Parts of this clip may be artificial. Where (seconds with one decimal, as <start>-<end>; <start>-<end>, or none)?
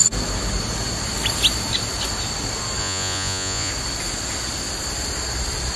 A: 2.8-3.7